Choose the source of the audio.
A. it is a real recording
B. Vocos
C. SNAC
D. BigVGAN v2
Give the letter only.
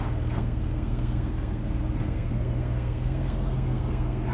C